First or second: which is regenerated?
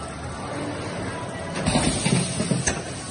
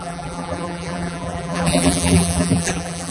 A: second